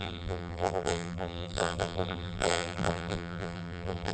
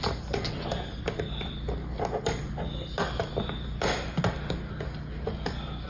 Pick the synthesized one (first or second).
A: first